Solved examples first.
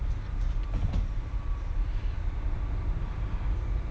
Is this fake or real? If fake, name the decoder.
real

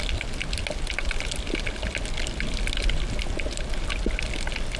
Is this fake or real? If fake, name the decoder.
real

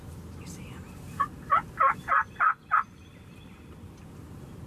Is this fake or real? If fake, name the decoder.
real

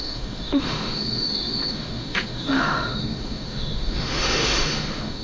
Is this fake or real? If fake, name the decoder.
fake, autoencoder, DAC-VAE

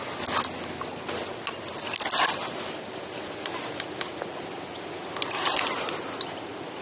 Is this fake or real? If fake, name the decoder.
real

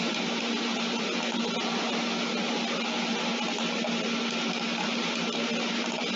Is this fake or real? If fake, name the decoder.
real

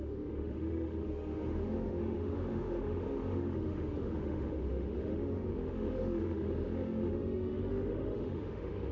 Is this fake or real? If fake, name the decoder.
fake, autoencoder, DAC-VAE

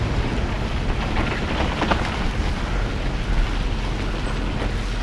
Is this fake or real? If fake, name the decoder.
real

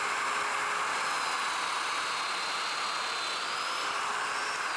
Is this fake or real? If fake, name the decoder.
real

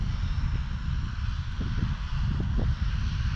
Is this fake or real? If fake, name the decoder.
real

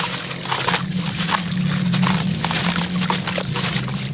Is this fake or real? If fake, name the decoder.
real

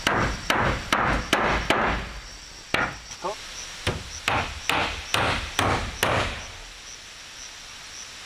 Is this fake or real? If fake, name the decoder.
real